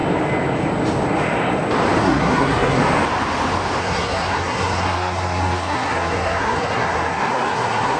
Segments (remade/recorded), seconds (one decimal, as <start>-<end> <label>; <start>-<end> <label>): 0.0-2.0 recorded; 2.0-2.8 remade; 2.8-3.8 recorded; 3.8-8.0 remade